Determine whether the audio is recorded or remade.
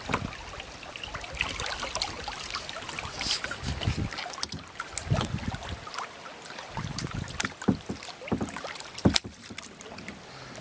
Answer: recorded